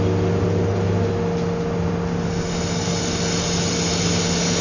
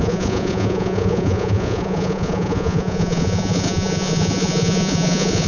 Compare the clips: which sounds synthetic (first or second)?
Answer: second